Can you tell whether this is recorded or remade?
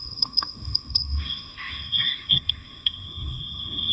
remade